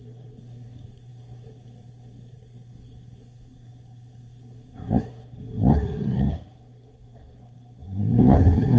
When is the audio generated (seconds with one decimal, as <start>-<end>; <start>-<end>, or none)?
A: 0.0-8.8